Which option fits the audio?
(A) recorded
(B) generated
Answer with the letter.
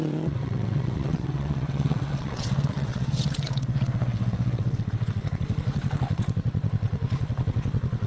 B